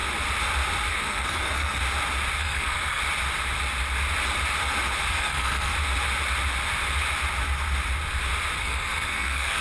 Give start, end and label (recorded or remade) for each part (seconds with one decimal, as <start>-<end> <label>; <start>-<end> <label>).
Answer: 0.0-0.9 recorded; 0.9-1.8 remade; 1.8-2.4 recorded; 2.4-3.0 remade; 3.0-5.1 recorded; 5.1-5.7 remade; 5.7-8.6 recorded; 8.6-9.6 remade